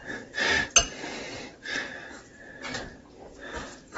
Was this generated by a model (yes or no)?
no